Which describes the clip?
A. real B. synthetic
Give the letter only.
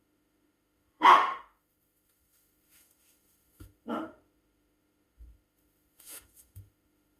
B